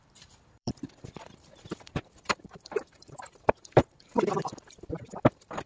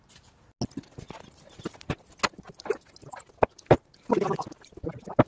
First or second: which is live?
second